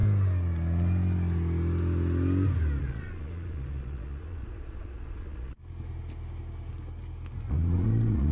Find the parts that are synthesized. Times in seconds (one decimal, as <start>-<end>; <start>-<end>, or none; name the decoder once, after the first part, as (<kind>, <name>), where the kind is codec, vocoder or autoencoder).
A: 2.8-5.6 (vocoder, Vocos); 7.5-8.3